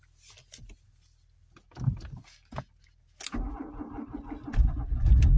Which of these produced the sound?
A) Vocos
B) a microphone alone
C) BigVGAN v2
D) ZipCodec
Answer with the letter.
B